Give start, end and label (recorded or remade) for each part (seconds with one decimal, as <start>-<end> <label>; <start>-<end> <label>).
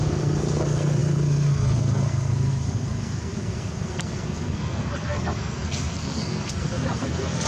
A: 0.0-7.5 remade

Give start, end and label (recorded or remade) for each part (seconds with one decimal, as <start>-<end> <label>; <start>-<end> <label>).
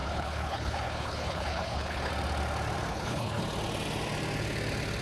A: 0.0-2.1 remade; 2.1-2.9 recorded; 2.9-3.4 remade; 3.4-5.0 recorded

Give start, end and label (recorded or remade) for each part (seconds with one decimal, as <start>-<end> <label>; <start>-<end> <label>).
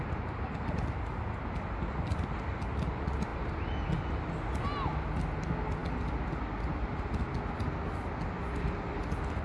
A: 0.0-9.4 recorded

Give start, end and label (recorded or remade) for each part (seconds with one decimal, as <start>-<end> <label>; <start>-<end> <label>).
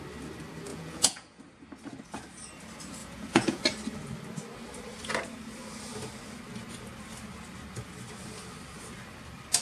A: 0.0-0.7 recorded; 0.7-1.4 remade; 1.4-3.0 recorded; 3.0-3.6 remade; 3.6-9.6 recorded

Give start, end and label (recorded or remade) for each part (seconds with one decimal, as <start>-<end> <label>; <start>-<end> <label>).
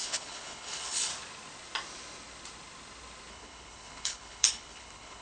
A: 0.0-1.1 remade; 1.1-3.3 recorded; 3.3-5.2 remade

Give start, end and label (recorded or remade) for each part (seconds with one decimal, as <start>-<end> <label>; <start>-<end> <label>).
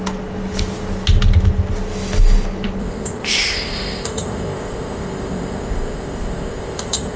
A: 0.0-2.8 recorded; 2.8-7.2 remade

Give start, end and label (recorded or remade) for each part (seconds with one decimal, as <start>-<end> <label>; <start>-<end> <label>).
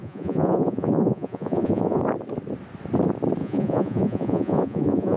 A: 0.0-2.0 remade; 2.0-3.4 recorded; 3.4-5.2 remade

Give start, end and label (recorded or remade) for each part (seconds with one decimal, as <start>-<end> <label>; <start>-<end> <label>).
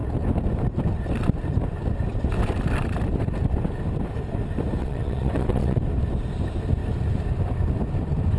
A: 0.0-4.8 recorded; 4.8-5.8 remade; 5.8-8.4 recorded